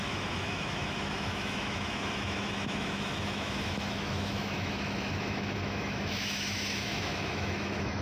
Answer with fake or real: fake